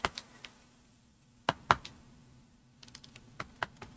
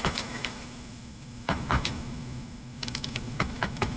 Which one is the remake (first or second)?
second